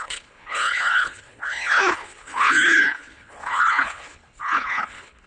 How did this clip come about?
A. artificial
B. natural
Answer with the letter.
A